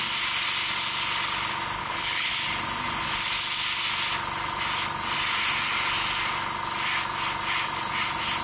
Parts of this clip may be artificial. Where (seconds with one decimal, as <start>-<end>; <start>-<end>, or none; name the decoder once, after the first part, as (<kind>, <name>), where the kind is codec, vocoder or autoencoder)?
1.8-2.3 (codec, HILCodec)